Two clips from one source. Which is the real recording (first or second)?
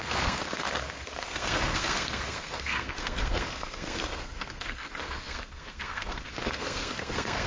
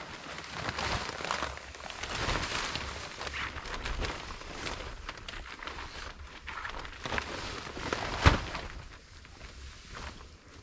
second